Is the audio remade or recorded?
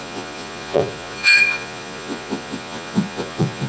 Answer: remade